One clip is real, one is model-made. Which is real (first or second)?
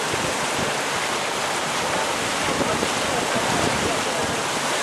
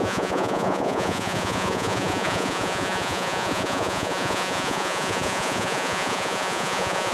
first